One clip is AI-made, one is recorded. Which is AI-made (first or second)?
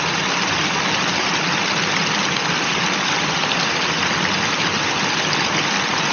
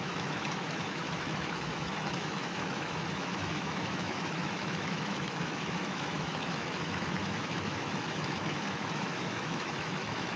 second